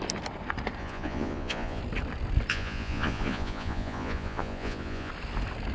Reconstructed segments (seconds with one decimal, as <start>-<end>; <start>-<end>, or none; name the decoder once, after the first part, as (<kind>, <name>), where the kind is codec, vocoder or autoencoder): 0.8-1.8 (vocoder, Vocos); 2.5-5.1